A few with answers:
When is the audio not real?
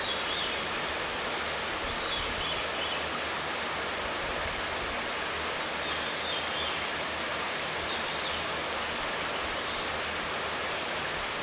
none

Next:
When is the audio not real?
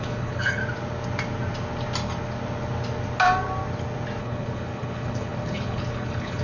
0.0-0.6 (codec, HILCodec); 4.2-6.4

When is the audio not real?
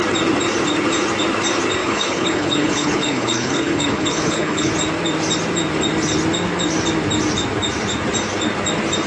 1.8-4.7 (codec, HILCodec)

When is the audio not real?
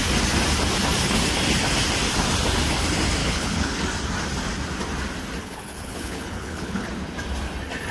3.2-3.8 (codec, HILCodec); 5.4-6.9